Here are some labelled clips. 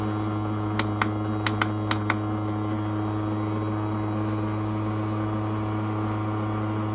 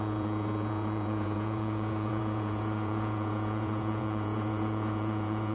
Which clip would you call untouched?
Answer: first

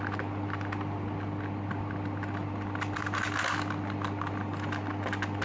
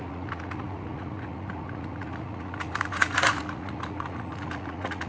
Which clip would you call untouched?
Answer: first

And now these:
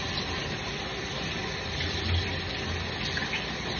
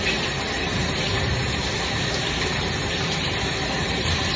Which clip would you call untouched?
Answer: first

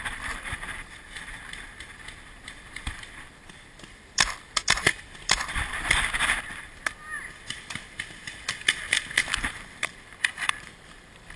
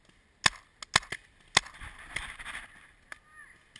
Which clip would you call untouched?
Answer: second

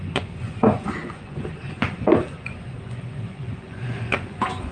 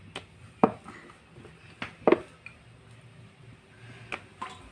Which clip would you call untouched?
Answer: second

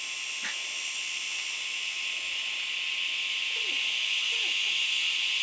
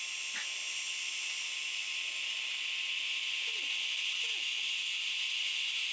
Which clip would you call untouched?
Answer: first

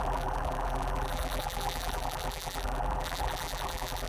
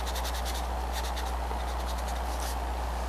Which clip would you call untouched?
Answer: second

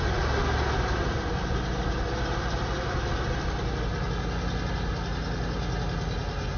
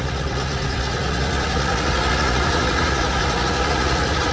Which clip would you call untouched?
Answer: first